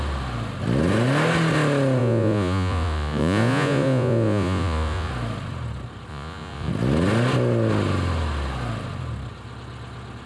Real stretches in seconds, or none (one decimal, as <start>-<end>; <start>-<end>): 0.0-2.0; 5.1-6.1; 6.7-10.3